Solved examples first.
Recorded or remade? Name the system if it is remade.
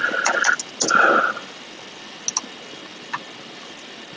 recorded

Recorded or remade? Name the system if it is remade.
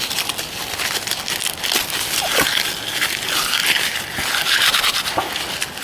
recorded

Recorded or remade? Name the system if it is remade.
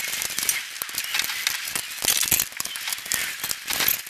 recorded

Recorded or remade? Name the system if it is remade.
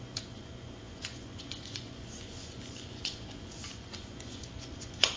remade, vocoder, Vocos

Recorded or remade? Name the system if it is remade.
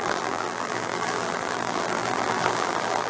remade, vocoder, BigVGAN v2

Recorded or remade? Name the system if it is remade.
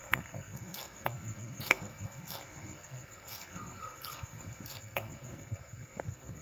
remade, codec, SNAC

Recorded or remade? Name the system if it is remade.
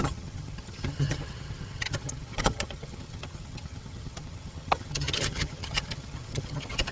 remade, vocoder, HiFi-GAN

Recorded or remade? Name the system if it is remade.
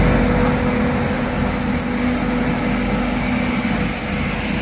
recorded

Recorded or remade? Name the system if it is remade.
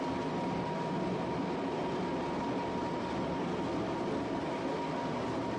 recorded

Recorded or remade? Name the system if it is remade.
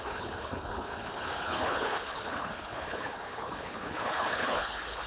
remade, codec, HILCodec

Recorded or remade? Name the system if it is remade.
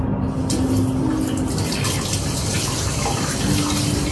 recorded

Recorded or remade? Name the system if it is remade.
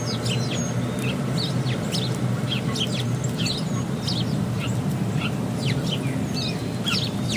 recorded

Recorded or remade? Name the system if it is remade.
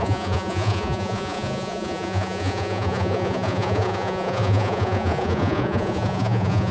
remade, vocoder, Vocos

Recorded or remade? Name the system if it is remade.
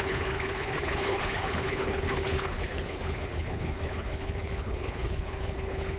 remade, codec, HILCodec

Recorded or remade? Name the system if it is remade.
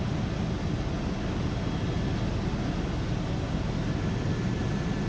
recorded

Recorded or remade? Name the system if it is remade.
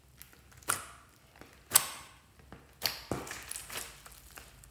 recorded